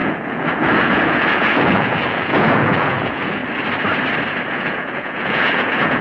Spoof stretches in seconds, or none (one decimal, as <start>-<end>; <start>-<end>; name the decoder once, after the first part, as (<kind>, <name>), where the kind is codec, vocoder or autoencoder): 0.0-3.4 (vocoder, Vocos); 4.5-6.0